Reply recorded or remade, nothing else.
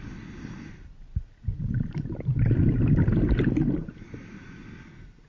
recorded